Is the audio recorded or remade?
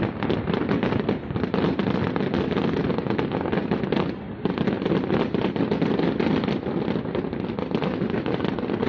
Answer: recorded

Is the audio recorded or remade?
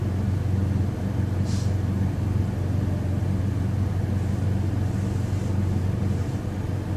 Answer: recorded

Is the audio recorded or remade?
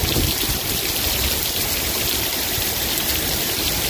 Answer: recorded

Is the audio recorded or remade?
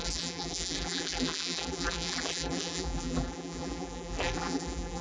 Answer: remade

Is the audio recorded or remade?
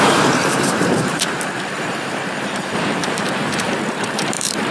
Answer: remade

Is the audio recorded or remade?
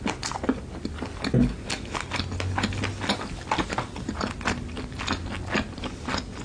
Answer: recorded